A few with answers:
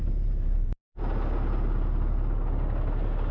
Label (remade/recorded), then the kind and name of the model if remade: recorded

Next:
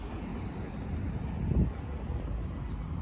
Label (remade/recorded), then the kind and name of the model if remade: recorded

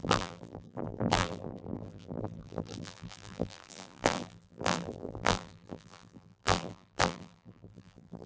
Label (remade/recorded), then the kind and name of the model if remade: remade, vocoder, BigVGAN v2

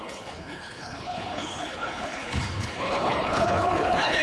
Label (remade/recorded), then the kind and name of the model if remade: remade, codec, HILCodec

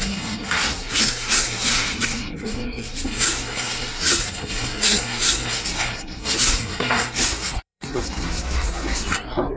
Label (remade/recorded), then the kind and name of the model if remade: remade, codec, SNAC